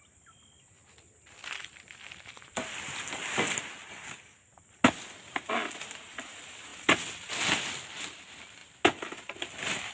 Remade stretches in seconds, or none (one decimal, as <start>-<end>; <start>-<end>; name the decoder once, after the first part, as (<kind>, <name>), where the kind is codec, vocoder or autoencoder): none